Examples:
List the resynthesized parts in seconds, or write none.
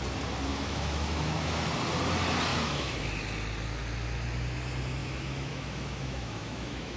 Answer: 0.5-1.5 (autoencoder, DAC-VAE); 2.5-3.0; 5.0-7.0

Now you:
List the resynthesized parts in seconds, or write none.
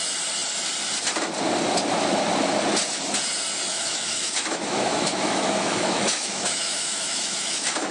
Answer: 3.7-7.9 (autoencoder, DAC-VAE)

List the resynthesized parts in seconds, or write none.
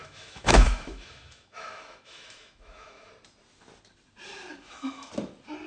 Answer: 0.0-3.1 (autoencoder, DAC-VAE); 4.5-5.1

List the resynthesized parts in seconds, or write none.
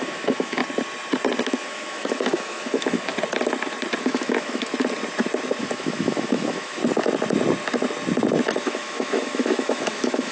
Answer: 0.0-0.6 (autoencoder, DAC-VAE); 1.4-3.1; 4.0-4.7; 5.6-6.8; 8.5-10.3